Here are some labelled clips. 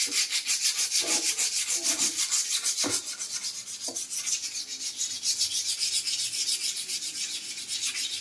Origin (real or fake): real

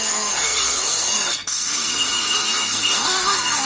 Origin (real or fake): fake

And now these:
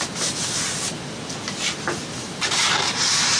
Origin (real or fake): fake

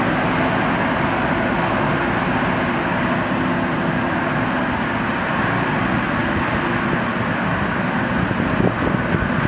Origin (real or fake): real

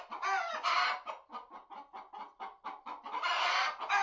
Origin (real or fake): real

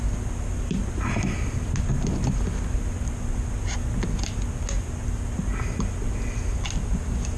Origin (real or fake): real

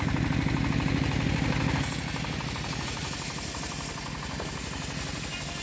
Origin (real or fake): real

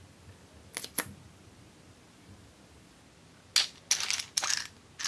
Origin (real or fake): real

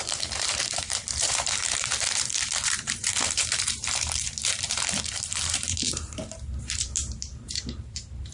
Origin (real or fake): fake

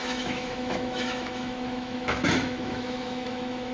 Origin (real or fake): fake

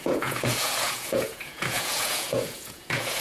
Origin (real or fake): fake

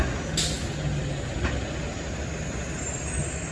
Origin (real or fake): real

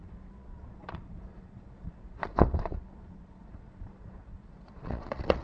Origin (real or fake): fake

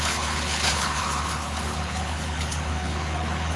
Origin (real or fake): fake